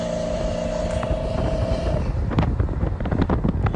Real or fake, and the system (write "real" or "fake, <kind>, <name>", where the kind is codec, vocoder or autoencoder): real